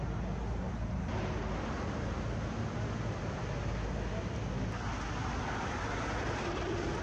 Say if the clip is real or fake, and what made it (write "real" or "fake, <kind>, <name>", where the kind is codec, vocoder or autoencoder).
real